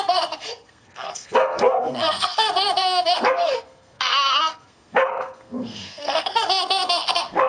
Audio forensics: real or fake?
fake